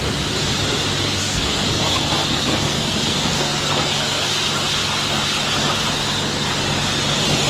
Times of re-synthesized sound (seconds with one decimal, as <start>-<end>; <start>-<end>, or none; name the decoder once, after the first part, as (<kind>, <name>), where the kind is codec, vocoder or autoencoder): 1.2-4.3 (codec, SNAC)